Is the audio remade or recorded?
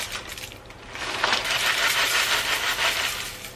recorded